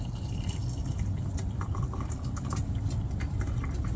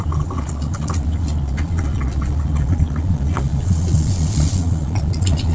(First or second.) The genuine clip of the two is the first